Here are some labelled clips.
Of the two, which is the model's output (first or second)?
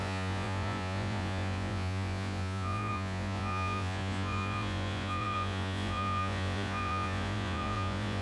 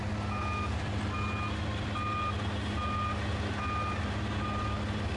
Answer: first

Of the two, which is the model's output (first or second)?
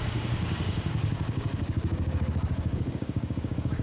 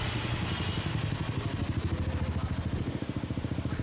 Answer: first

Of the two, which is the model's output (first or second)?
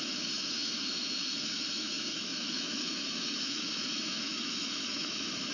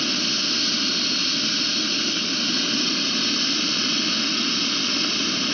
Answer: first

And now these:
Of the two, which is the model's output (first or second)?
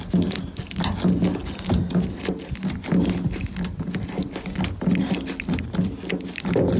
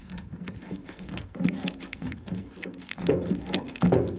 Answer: second